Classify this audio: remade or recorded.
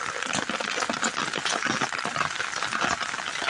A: recorded